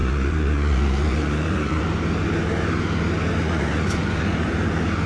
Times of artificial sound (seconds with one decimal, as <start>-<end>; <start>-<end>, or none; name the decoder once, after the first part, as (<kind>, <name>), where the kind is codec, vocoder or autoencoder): 0.0-1.8 (vocoder, Vocos); 3.4-4.5